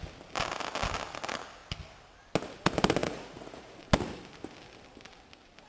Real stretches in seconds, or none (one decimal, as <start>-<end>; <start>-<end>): 0.0-3.0; 3.8-5.7